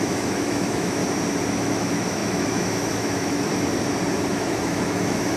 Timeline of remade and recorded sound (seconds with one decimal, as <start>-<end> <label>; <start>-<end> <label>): 0.0-1.0 remade; 1.0-1.5 recorded; 1.5-3.5 remade; 3.5-4.3 recorded; 4.3-5.4 remade